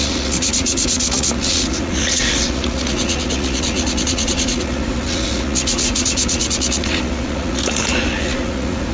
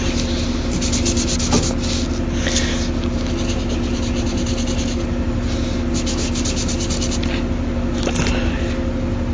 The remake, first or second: first